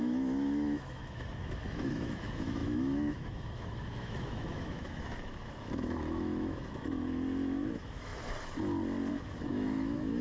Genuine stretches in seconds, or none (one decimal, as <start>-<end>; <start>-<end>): 8.1-9.1